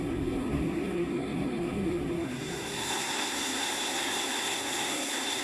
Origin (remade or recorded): remade